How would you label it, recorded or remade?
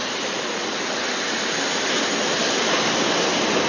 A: recorded